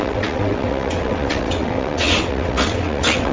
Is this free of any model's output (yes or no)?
no